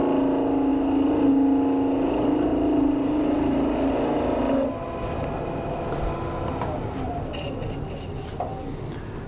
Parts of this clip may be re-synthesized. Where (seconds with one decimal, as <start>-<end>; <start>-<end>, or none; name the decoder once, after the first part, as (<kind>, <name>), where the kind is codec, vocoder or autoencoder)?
none